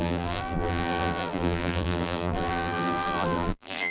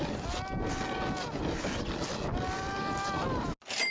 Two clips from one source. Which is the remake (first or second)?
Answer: first